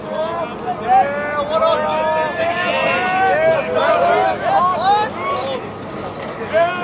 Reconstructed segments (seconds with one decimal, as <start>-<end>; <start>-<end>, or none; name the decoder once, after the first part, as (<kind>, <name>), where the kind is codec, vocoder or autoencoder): none